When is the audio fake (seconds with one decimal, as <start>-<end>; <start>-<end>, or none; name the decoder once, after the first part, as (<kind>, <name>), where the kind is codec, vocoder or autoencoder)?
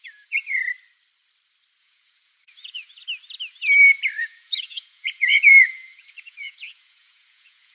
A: 0.0-0.6 (vocoder, Vocos); 1.8-3.0; 4.2-7.7